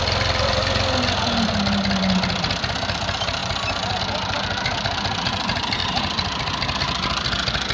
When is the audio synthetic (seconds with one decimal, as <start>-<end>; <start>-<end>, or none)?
5.8-6.8